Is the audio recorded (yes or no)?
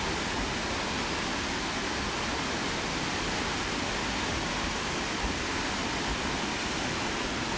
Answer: yes